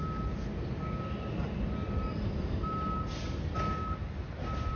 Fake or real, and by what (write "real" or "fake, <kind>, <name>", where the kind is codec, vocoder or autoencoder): real